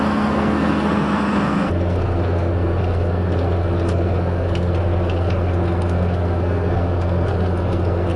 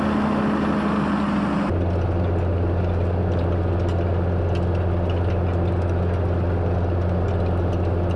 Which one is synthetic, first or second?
first